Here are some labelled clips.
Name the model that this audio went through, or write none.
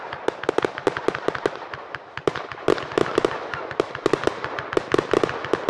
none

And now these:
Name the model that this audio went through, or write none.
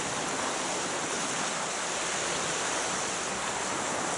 none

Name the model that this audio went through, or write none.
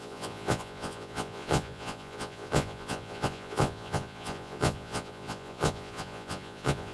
vocoder, Vocos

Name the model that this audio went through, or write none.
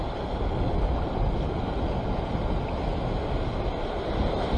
none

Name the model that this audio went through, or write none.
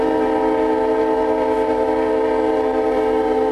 vocoder, BigVGAN v2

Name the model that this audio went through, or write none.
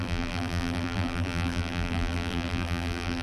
vocoder, BigVGAN v2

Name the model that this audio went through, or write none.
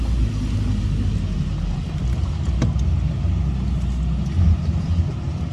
none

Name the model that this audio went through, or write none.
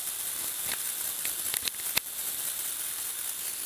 none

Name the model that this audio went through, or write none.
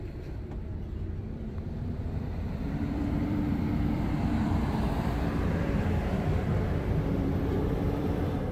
vocoder, BigVGAN v2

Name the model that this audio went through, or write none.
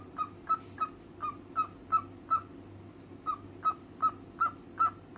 none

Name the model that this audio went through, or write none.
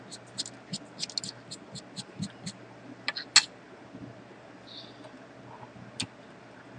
none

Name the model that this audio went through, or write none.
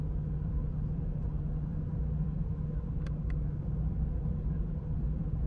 none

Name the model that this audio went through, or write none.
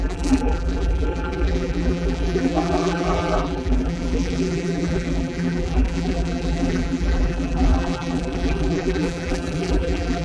vocoder, BigVGAN v2